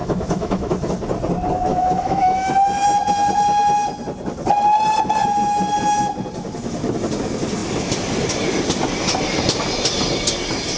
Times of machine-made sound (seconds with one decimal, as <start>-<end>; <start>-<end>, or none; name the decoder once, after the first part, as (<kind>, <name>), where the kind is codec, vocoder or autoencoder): 0.0-0.9 (autoencoder, DAC-VAE); 1.7-2.5